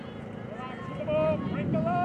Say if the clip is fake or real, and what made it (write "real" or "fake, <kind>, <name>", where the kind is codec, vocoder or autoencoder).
real